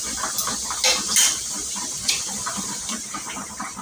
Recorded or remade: remade